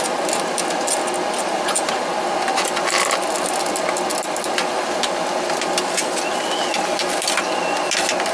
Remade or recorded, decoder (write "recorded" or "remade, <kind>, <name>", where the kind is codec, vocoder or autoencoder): recorded